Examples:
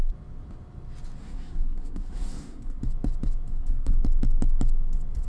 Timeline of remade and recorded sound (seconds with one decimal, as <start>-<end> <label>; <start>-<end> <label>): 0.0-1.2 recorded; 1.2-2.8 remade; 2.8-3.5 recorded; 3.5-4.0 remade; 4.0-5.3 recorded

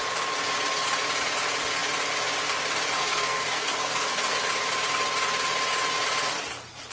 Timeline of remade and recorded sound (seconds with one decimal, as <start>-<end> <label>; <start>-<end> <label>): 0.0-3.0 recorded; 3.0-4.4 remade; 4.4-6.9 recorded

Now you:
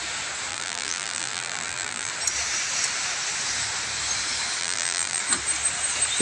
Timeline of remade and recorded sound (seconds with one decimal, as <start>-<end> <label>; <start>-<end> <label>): 0.0-0.5 recorded; 0.5-2.1 remade; 2.1-4.6 recorded; 4.6-5.2 remade; 5.2-6.2 recorded

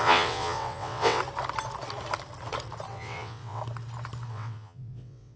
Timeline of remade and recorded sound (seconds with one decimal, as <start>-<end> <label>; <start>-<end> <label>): 0.0-1.2 remade; 1.2-2.9 recorded; 2.9-3.6 remade; 3.6-4.3 recorded; 4.3-5.4 remade

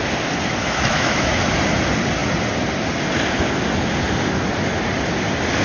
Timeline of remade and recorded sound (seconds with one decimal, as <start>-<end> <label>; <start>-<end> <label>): 0.0-0.6 recorded; 0.6-1.4 remade; 1.4-5.6 recorded

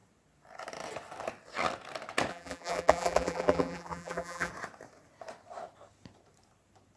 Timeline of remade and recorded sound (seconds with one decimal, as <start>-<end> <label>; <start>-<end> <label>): 0.0-2.3 recorded; 2.3-4.5 remade; 4.5-7.0 recorded